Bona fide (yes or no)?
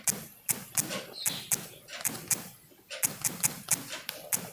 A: yes